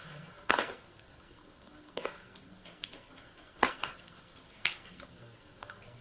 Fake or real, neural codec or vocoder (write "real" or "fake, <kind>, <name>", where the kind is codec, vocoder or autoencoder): fake, codec, SNAC